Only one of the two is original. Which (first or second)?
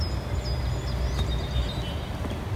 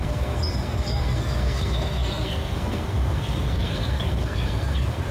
first